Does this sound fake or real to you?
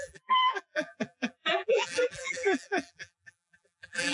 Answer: fake